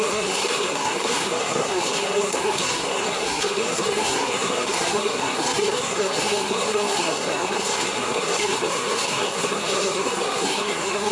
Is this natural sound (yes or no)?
no